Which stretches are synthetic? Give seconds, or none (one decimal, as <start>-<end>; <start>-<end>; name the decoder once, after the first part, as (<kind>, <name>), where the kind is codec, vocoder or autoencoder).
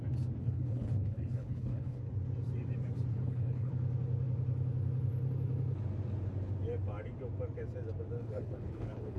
0.4-2.0 (codec, HILCodec); 3.1-3.7; 8.2-9.2